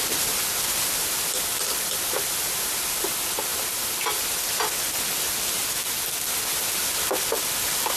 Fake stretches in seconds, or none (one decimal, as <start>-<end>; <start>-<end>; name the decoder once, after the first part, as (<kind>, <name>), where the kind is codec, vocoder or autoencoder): none